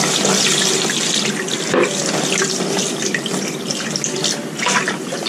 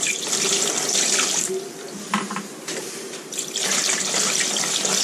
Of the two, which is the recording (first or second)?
first